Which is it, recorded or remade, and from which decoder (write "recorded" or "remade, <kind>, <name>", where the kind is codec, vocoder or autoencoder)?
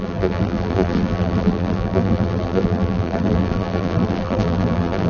remade, vocoder, BigVGAN v2